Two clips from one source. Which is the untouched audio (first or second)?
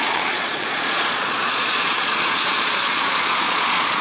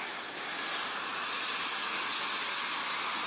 second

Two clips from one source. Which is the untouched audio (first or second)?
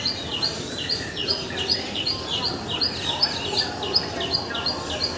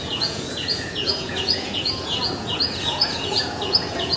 first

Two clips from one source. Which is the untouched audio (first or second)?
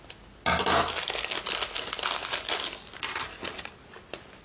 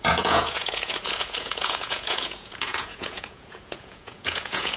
first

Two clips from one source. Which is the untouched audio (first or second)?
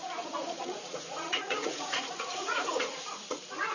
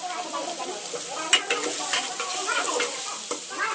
second